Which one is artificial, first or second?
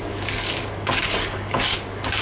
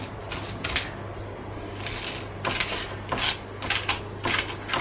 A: first